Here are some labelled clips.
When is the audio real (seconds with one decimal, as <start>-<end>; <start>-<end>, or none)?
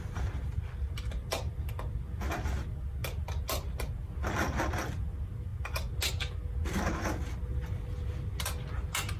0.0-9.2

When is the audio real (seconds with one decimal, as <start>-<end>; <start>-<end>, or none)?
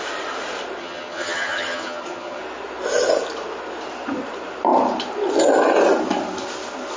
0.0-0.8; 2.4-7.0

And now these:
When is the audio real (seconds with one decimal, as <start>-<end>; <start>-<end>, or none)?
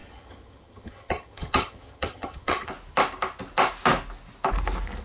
2.7-5.0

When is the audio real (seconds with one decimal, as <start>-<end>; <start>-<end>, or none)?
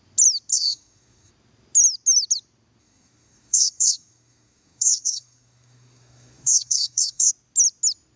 0.0-0.5; 1.3-2.8; 7.3-8.2